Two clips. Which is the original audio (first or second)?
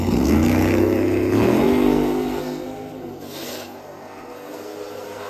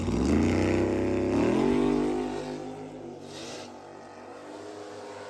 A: second